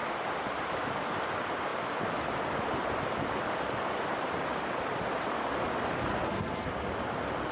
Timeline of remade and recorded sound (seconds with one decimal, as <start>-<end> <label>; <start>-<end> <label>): 0.0-6.1 recorded; 6.1-6.7 remade; 6.7-7.5 recorded